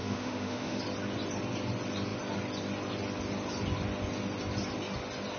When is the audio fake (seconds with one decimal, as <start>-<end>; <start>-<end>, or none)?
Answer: 0.0-0.8